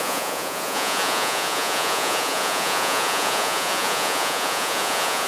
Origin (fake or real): fake